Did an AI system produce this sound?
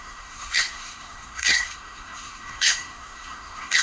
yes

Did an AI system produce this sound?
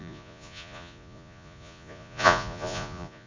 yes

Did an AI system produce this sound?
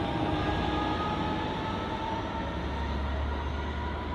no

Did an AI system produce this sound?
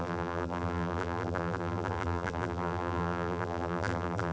yes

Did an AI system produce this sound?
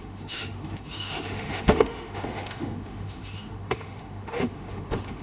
yes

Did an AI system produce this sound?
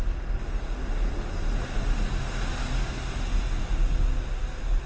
no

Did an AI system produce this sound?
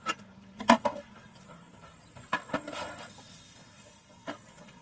no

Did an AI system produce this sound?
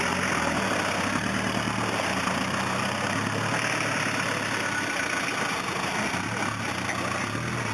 no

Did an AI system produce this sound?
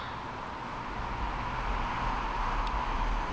no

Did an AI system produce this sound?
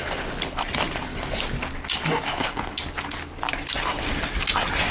no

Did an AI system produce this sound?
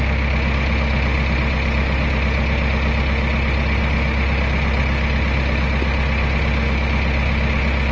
no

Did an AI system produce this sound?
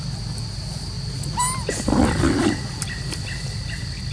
no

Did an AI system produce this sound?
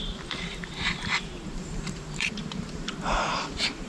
yes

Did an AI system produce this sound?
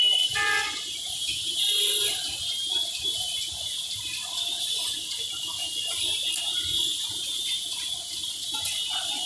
yes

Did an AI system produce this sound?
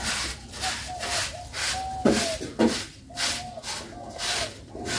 no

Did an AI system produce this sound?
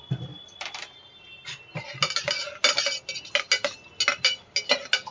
no